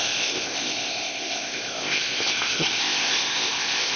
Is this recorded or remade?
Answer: remade